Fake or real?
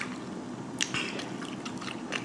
real